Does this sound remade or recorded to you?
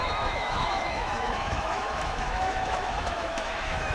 remade